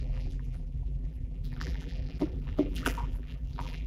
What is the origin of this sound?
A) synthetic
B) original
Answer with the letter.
A